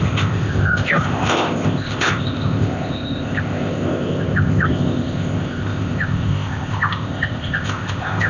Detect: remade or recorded remade